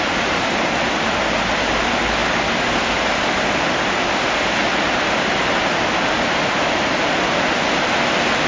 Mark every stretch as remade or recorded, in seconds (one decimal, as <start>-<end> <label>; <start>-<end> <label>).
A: 0.0-8.5 recorded